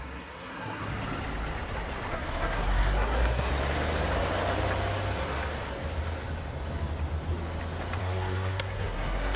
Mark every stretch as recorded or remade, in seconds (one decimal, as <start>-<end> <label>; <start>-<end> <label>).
0.0-0.9 remade; 0.9-2.1 recorded; 2.1-3.5 remade; 3.5-8.0 recorded; 8.0-9.4 remade